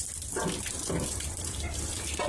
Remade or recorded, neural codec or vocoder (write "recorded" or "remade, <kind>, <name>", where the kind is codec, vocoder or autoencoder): recorded